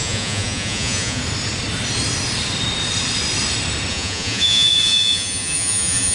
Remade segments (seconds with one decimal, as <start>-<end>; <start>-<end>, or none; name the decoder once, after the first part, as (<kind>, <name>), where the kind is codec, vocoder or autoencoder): 0.0-1.2 (vocoder, Vocos); 3.9-6.1